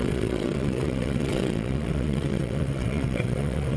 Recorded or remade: remade